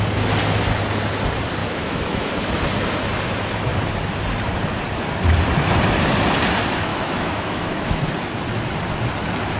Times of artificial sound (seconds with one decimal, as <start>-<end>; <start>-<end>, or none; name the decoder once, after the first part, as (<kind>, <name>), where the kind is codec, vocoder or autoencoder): 1.6-2.3 (autoencoder, DAC-VAE); 6.9-8.0